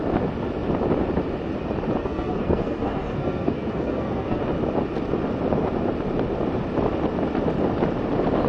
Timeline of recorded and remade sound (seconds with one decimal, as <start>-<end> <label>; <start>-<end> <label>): 0.0-2.0 recorded; 2.0-4.4 remade; 4.4-8.5 recorded